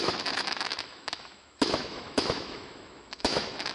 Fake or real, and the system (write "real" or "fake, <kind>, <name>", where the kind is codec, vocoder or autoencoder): fake, autoencoder, DAC-VAE